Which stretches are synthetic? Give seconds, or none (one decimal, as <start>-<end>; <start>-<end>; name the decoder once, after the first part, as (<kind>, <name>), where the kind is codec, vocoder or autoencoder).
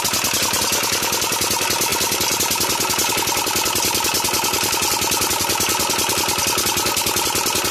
none